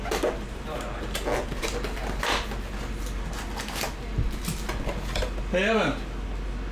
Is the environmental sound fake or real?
real